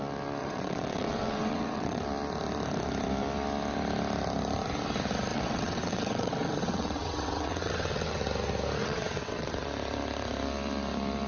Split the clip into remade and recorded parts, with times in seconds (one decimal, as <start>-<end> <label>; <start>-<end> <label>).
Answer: 0.0-0.4 recorded; 0.4-2.0 remade; 2.0-5.3 recorded; 5.3-8.2 remade; 8.2-8.8 recorded; 8.8-9.5 remade; 9.5-11.3 recorded